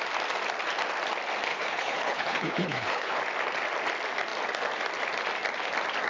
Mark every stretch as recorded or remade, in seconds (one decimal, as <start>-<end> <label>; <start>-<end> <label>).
0.0-1.5 recorded; 1.5-3.2 remade; 3.2-6.1 recorded